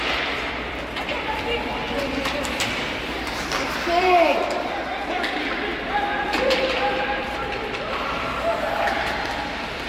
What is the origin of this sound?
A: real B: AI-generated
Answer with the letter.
B